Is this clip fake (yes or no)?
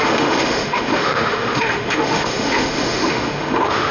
yes